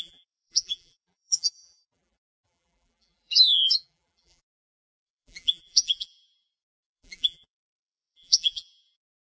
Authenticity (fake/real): fake